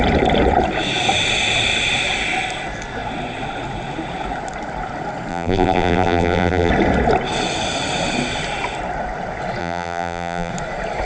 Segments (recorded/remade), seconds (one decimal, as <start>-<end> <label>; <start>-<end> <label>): 0.0-5.3 recorded; 5.3-6.7 remade; 6.7-9.6 recorded; 9.6-10.5 remade; 10.5-11.0 recorded